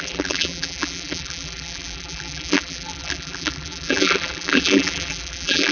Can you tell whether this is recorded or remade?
remade